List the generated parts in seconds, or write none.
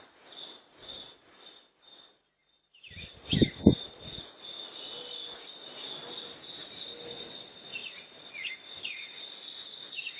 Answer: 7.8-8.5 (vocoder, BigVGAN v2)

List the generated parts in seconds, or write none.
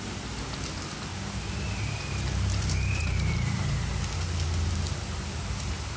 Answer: 1.1-4.7 (vocoder, BigVGAN v2)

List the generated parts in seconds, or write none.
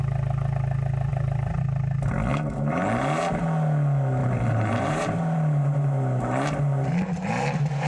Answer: 1.1-1.6 (vocoder, BigVGAN v2); 2.3-3.4; 4.2-7.3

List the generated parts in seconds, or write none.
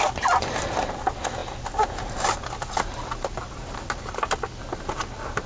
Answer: none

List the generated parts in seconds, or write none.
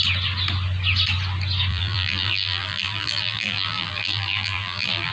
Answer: 1.7-5.1 (vocoder, BigVGAN v2)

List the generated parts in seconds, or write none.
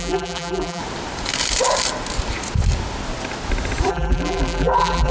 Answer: 0.0-0.8 (vocoder, BigVGAN v2); 3.9-5.1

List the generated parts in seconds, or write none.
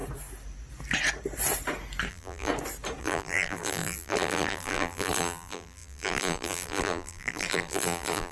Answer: 2.1-2.5 (vocoder, BigVGAN v2); 3.0-8.3